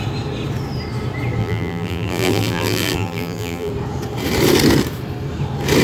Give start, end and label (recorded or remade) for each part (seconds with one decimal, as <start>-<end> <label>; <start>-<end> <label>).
0.0-1.4 recorded; 1.4-3.7 remade; 3.7-5.8 recorded